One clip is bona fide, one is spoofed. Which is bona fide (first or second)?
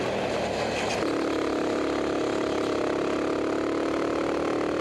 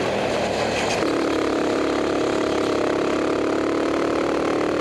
first